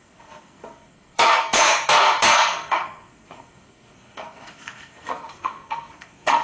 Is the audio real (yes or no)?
no